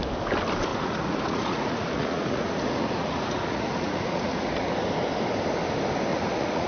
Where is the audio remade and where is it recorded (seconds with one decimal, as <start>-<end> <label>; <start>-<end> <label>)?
0.0-0.7 recorded; 0.7-4.7 remade; 4.7-6.1 recorded; 6.1-6.7 remade